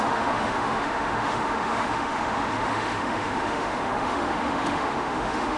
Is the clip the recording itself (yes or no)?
no